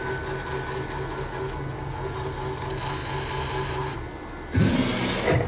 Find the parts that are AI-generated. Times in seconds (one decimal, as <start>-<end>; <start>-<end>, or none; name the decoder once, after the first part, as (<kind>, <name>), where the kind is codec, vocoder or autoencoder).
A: none